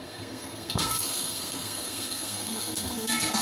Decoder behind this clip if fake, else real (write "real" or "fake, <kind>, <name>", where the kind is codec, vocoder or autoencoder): fake, codec, SNAC